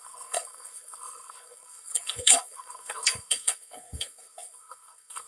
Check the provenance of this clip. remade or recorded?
remade